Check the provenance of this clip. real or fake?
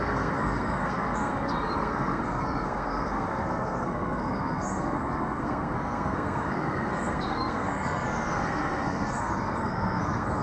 fake